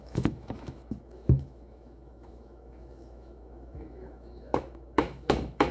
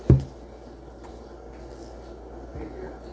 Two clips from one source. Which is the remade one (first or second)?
first